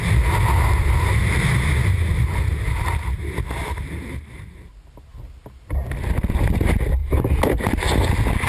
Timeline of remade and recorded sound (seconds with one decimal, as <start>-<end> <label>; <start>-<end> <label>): 0.0-1.2 remade; 1.2-2.1 recorded; 2.1-5.1 remade; 5.1-6.1 recorded; 6.1-7.0 remade; 7.0-8.5 recorded